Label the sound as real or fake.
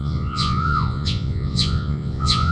fake